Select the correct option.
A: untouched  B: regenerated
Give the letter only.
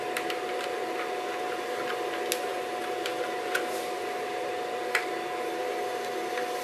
A